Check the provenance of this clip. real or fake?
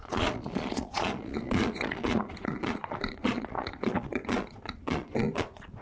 fake